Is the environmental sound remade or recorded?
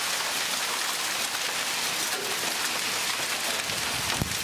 recorded